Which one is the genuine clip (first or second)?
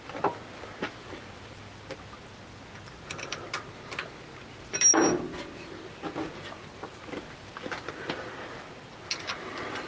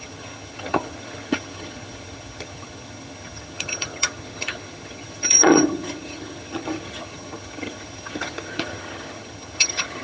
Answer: first